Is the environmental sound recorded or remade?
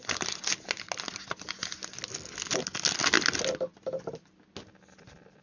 recorded